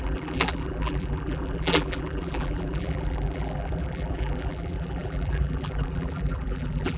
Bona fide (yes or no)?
no